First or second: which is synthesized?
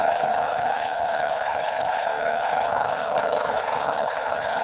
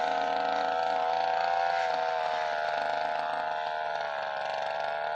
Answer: first